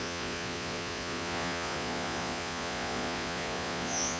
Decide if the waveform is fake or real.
fake